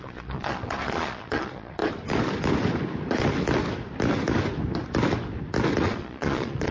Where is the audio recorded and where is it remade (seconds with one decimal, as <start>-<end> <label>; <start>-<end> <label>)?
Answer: 0.0-1.8 remade; 1.8-5.8 recorded; 5.8-6.7 remade